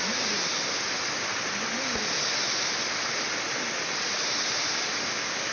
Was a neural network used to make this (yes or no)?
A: no